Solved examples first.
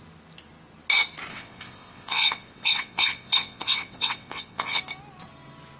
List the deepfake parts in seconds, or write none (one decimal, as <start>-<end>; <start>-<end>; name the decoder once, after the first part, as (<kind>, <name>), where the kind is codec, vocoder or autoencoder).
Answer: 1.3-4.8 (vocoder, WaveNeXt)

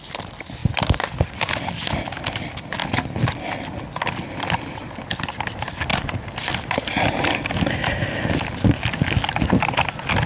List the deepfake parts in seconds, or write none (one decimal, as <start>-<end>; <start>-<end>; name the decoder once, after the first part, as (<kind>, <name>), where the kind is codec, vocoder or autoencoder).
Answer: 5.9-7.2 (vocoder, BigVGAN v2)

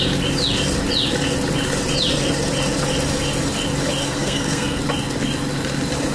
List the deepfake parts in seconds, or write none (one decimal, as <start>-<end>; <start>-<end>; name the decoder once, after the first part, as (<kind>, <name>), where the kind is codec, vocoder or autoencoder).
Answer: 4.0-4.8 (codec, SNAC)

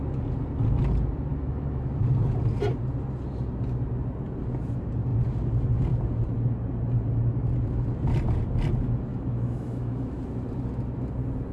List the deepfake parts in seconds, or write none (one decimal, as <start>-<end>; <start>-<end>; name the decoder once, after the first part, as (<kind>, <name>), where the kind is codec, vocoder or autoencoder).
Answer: 1.3-2.0 (autoencoder, DAC-VAE); 9.1-10.2